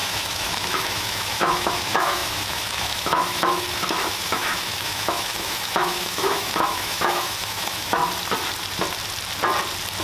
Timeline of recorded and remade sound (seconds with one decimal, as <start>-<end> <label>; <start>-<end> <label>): 0.0-8.0 remade; 8.0-10.0 recorded